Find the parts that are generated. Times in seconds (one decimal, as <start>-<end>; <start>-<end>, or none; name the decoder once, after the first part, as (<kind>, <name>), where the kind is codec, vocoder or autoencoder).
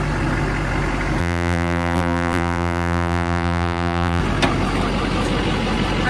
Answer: 1.2-4.2 (vocoder, BigVGAN v2)